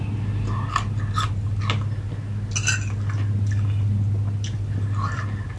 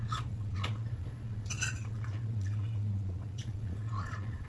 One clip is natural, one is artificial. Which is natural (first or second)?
first